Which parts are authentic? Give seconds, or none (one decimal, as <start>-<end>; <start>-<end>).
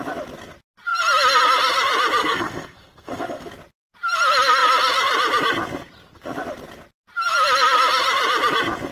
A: 0.0-2.2; 3.5-8.9